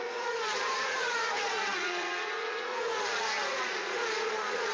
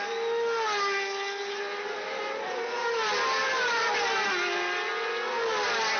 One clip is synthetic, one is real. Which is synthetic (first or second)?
first